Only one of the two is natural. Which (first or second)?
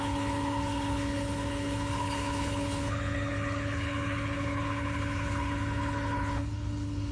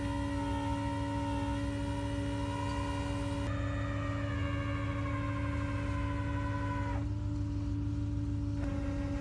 second